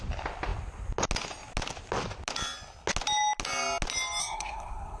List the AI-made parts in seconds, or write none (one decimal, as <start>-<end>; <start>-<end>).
4.2-5.0